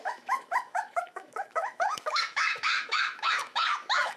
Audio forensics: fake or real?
fake